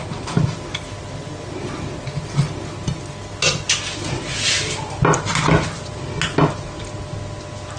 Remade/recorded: recorded